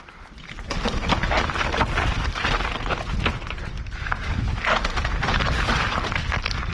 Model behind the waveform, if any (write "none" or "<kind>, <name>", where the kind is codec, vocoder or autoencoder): vocoder, BigVGAN v2